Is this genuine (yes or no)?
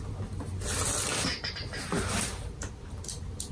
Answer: yes